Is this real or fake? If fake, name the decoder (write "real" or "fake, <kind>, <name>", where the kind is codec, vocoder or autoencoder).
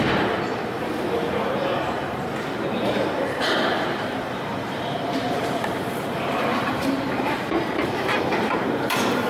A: fake, vocoder, BigVGAN v2